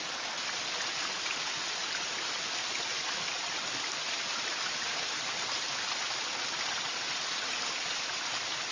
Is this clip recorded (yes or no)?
yes